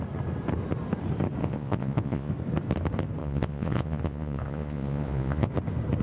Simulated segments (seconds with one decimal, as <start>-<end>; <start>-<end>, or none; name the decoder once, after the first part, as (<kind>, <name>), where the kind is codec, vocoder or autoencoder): 1.4-2.3 (vocoder, Vocos); 3.2-5.5